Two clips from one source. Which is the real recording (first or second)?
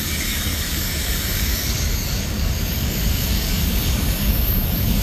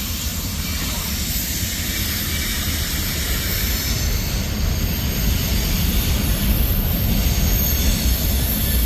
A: second